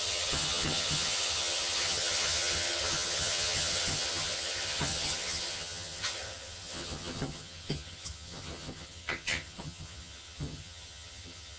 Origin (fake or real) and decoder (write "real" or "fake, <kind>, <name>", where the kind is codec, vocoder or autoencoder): fake, vocoder, HiFi-GAN